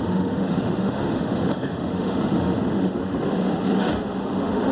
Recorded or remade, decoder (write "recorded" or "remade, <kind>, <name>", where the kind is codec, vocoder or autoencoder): remade, autoencoder, DAC-VAE